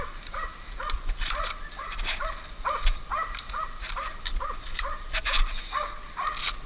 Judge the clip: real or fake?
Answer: real